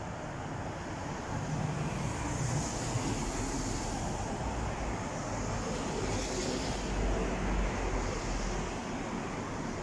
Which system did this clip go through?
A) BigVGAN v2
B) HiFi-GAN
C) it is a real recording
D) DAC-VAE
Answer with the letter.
C